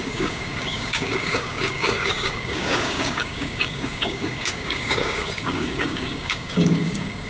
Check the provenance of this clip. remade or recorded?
remade